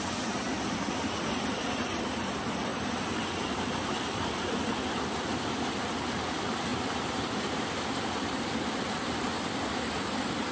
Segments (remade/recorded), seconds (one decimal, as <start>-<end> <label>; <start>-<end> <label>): 0.0-2.7 recorded; 2.7-4.4 remade; 4.4-10.5 recorded